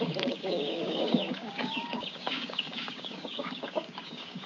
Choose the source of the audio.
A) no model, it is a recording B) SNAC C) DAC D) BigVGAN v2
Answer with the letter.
C